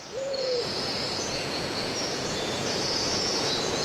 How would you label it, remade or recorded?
remade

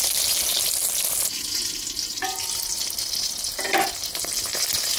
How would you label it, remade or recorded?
recorded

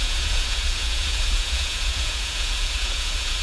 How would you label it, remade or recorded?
remade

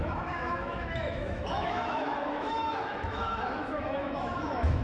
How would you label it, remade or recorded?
remade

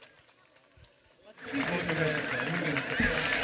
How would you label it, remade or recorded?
recorded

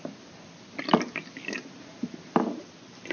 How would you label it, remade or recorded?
recorded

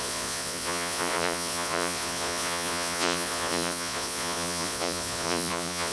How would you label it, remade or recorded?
remade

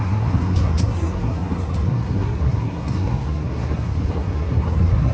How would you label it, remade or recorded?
remade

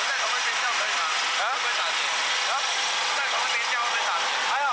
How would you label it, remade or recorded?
recorded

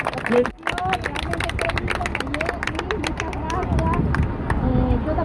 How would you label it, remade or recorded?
recorded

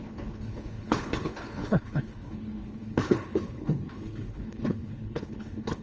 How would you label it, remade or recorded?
remade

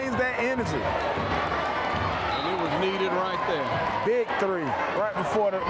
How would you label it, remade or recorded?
recorded